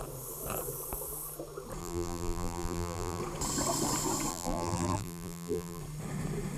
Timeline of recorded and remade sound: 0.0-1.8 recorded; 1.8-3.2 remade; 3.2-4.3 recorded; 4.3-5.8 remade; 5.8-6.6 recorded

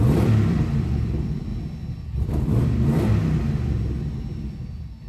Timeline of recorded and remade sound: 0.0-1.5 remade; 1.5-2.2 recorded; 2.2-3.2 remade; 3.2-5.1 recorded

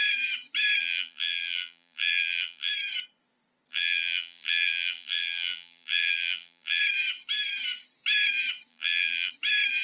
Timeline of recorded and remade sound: 0.0-0.8 recorded; 0.8-2.7 remade; 2.7-3.7 recorded; 3.7-6.8 remade; 6.8-8.7 recorded; 8.7-9.3 remade; 9.3-9.8 recorded

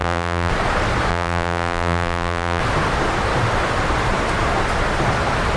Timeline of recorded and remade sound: 0.0-0.5 remade; 0.5-1.1 recorded; 1.1-2.6 remade; 2.6-5.6 recorded

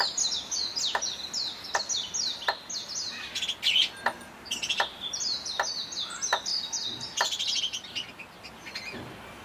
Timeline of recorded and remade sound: 0.0-9.4 recorded

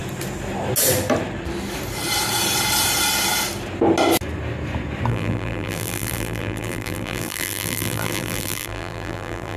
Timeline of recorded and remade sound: 0.0-5.1 recorded; 5.1-9.6 remade

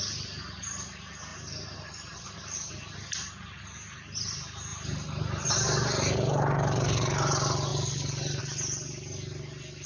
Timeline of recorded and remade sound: 0.0-1.3 recorded; 1.3-2.7 remade; 2.7-4.7 recorded; 4.7-5.5 remade; 5.5-9.9 recorded

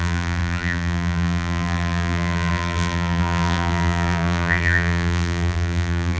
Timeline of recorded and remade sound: 0.0-6.2 remade